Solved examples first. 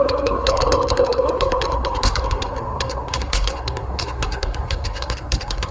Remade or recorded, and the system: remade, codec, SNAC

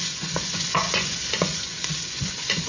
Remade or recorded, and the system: remade, vocoder, Vocos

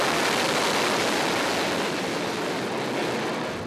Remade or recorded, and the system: recorded